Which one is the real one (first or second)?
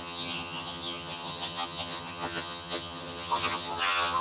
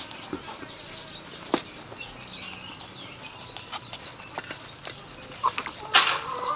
second